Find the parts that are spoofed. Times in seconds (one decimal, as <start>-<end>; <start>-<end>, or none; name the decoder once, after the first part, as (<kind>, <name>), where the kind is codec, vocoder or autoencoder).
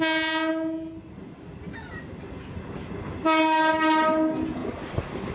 4.6-5.3 (vocoder, BigVGAN v2)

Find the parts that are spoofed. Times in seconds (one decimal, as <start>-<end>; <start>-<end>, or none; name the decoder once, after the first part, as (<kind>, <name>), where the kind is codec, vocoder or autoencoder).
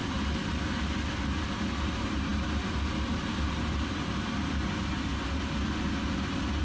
none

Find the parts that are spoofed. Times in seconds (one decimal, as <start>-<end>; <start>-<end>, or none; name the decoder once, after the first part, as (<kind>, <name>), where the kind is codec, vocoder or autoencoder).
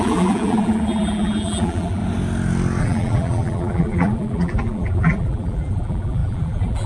0.0-2.0 (vocoder, BigVGAN v2); 2.8-6.9